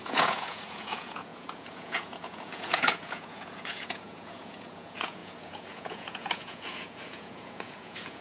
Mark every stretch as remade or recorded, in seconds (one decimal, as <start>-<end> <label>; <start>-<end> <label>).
0.0-8.2 remade